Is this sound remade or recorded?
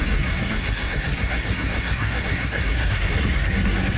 remade